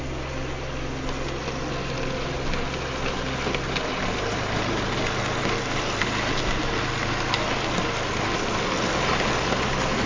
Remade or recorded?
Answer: recorded